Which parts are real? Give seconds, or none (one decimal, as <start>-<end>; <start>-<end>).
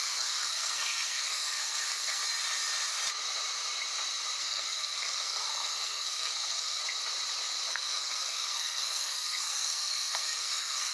2.2-4.4; 6.8-7.7